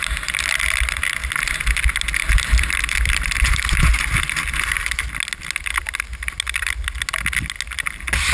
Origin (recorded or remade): recorded